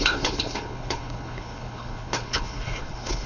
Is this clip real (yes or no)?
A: no